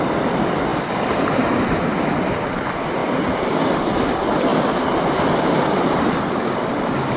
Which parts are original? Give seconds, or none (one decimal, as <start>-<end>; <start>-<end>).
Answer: none